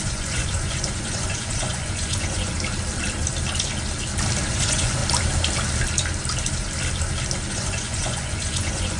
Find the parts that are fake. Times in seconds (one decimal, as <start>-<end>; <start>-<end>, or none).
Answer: 0.0-2.5; 4.5-5.0; 7.5-9.0